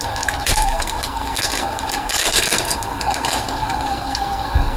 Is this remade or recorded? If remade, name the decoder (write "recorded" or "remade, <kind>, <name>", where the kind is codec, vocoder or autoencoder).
remade, codec, SNAC